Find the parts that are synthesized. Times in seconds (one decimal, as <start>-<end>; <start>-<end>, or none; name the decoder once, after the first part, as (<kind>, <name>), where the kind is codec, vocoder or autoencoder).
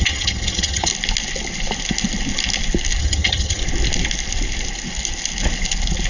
0.0-0.9 (vocoder, HiFi-GAN); 3.0-3.6